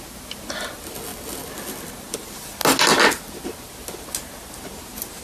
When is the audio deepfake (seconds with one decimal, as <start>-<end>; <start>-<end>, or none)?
none